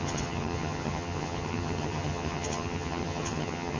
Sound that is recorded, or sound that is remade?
remade